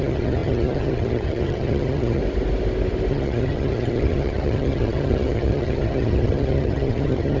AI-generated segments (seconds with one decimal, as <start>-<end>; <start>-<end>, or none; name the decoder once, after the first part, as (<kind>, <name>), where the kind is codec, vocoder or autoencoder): 0.0-2.2 (vocoder, HiFi-GAN); 3.1-7.4